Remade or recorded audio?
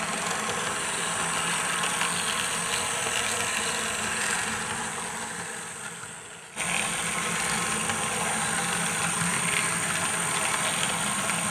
recorded